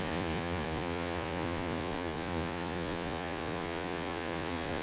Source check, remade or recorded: remade